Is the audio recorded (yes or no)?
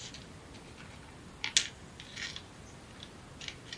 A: yes